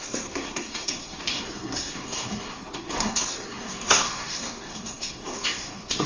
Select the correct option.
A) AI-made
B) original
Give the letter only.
A